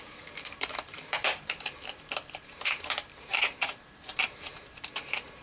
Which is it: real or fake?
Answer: fake